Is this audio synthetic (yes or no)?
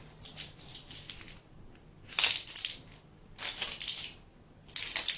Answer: no